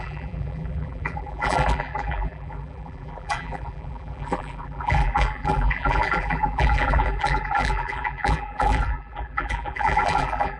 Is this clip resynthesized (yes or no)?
yes